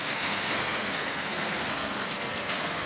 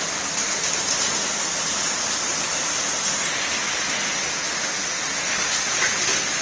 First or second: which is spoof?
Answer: first